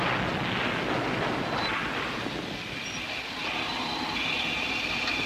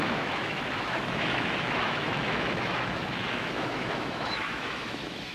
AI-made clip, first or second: second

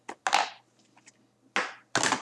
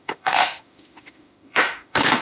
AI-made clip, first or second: second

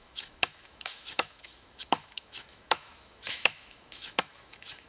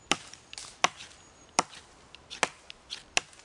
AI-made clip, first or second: first